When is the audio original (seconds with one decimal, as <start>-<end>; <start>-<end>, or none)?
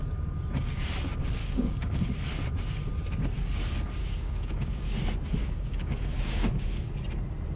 0.0-1.4; 2.0-4.0; 5.0-5.4; 6.9-7.6